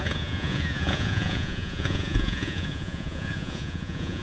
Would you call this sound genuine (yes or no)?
no